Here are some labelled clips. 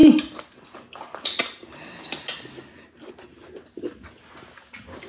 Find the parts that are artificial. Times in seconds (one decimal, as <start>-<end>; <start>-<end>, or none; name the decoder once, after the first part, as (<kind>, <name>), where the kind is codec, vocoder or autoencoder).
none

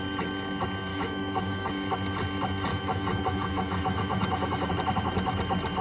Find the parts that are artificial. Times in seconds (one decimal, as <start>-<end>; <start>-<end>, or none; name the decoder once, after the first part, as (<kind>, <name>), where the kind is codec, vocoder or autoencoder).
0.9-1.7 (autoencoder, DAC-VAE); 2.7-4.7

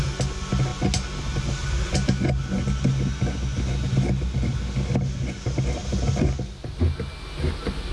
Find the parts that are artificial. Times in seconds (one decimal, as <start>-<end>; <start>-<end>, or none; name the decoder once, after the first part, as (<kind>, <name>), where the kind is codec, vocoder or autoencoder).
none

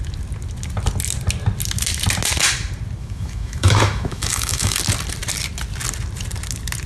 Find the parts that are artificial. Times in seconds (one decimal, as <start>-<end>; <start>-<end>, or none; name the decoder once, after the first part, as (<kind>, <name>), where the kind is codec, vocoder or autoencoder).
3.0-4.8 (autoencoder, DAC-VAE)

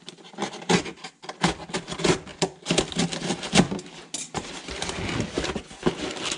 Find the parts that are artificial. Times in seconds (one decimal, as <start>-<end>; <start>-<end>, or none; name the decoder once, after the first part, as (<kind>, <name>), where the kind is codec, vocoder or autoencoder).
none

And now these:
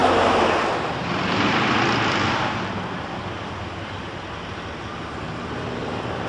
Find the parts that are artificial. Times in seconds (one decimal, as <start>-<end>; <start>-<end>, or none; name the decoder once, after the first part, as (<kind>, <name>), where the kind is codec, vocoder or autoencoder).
none